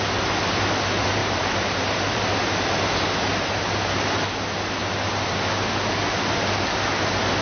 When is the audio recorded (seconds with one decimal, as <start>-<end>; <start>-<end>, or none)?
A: 0.0-1.2; 2.3-7.4